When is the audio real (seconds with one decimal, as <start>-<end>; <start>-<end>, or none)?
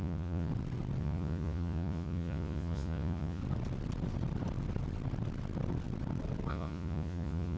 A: 0.5-1.0; 3.4-6.5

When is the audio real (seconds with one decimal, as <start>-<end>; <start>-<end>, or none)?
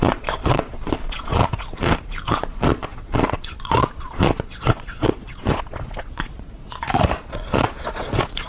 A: 1.4-2.3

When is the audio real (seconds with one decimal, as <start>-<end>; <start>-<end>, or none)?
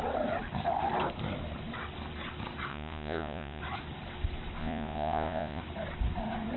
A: 0.0-2.7; 3.6-4.6; 5.6-6.6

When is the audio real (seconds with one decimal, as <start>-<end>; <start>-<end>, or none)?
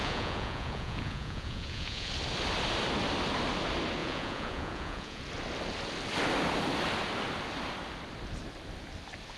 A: 2.1-4.0; 5.2-9.4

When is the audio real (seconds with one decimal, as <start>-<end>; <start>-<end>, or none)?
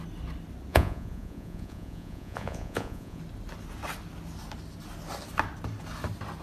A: 0.0-0.7; 3.2-6.4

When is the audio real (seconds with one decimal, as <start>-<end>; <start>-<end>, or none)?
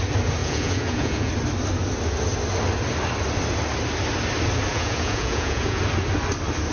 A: 0.0-0.4; 1.3-4.7; 5.8-6.7